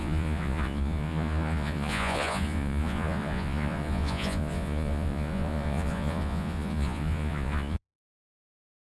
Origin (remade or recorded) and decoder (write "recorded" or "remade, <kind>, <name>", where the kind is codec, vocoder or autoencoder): remade, vocoder, Vocos